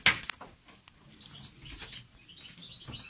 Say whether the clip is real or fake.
real